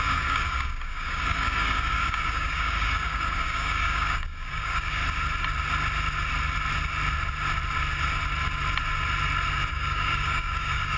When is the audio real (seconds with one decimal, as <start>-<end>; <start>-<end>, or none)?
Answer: 5.0-9.7